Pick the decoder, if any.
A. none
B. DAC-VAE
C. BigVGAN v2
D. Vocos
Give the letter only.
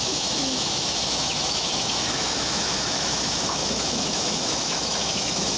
B